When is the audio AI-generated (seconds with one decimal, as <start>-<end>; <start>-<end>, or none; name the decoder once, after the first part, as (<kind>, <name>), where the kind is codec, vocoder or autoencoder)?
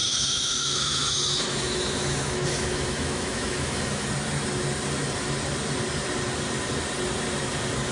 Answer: 0.0-4.1 (autoencoder, DAC-VAE)